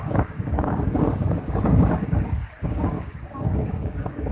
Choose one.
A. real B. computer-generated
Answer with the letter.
B